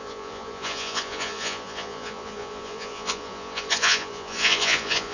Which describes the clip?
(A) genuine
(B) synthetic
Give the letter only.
B